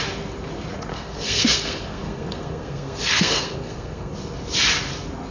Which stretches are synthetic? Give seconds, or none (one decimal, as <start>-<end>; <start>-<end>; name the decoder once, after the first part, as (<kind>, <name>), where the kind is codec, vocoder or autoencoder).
0.9-4.1 (codec, SNAC)